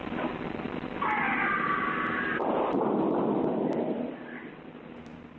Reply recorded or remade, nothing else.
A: recorded